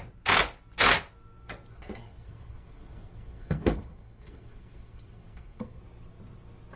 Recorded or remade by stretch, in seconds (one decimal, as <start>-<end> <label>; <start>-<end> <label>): 0.0-1.7 recorded; 1.7-5.8 remade; 5.8-6.8 recorded